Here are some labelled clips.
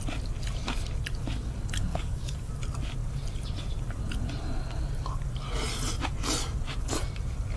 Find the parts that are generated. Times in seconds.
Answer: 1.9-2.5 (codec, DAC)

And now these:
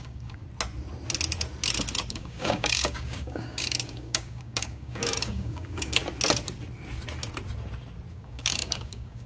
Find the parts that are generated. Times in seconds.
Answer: 0.0-0.4 (codec, DAC); 2.1-6.0; 8.1-9.3

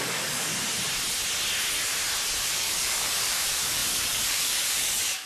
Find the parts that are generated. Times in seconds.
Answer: 0.0-0.5 (codec, DAC); 2.4-5.3

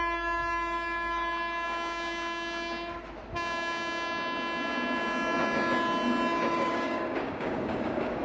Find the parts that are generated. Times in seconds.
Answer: 6.5-8.2 (codec, DAC)